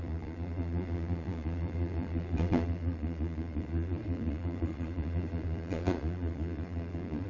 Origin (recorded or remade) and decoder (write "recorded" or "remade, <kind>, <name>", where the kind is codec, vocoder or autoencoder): remade, vocoder, Vocos